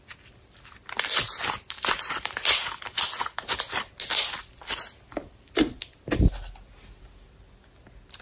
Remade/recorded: recorded